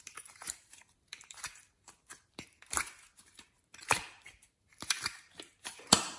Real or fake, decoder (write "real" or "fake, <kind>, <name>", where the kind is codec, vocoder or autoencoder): fake, vocoder, BigVGAN v2